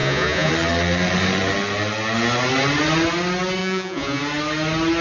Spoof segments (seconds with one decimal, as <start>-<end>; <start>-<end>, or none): 0.0-0.5; 3.6-4.2